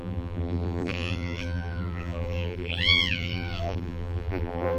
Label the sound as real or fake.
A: fake